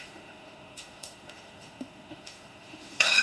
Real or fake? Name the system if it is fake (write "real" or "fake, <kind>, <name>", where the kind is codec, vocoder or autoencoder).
fake, autoencoder, DAC-VAE